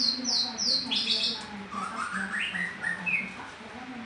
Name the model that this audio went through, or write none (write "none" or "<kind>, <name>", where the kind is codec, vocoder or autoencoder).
none